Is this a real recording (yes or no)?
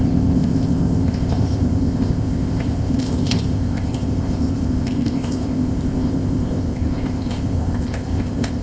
no